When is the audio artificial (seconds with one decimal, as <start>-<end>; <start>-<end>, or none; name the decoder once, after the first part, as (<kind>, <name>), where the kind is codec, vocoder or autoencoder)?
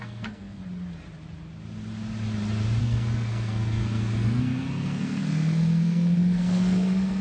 0.0-0.6 (codec, SNAC); 2.8-7.2